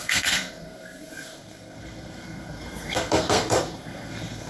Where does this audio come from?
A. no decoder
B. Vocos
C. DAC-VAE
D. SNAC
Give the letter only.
D